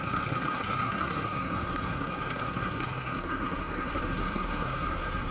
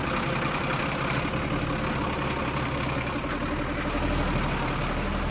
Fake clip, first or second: first